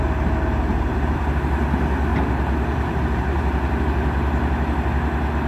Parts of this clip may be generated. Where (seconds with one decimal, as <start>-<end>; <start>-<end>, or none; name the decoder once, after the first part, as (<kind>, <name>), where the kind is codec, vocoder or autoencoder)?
0.6-1.2 (vocoder, BigVGAN v2); 2.1-3.8